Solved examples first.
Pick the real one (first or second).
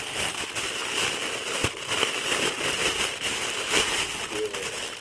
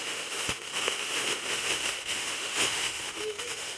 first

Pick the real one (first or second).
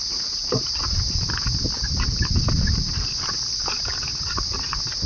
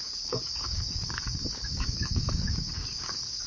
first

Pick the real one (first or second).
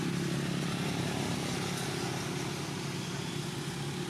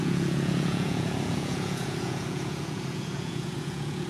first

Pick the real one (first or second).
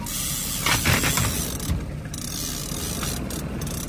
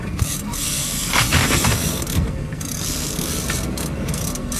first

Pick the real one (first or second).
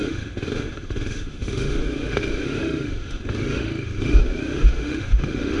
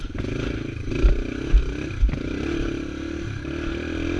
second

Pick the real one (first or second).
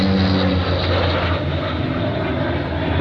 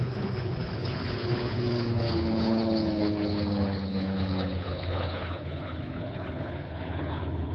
first